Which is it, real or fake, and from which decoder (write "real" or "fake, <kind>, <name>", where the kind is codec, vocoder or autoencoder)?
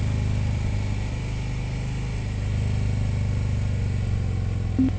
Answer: real